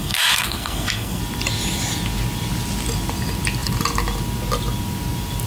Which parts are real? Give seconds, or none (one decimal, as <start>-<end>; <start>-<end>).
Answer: 1.2-5.5